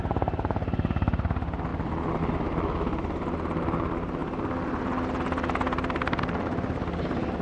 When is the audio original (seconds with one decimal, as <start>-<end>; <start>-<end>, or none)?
0.0-7.4